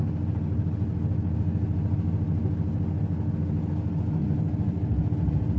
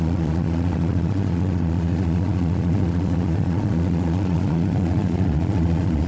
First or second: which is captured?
first